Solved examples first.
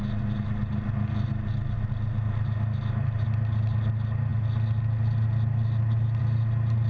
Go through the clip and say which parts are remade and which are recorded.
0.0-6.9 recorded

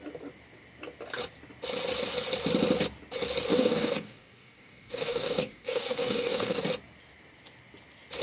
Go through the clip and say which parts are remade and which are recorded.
0.0-3.5 recorded; 3.5-6.6 remade; 6.6-8.2 recorded

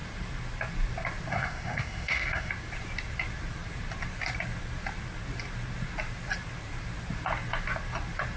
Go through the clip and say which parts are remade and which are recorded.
0.0-1.3 recorded; 1.3-2.5 remade; 2.5-8.4 recorded